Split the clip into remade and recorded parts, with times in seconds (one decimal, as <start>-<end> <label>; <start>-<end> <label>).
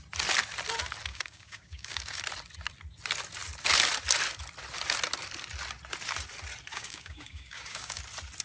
0.0-1.1 recorded; 1.1-2.2 remade; 2.2-6.7 recorded; 6.7-8.0 remade; 8.0-8.4 recorded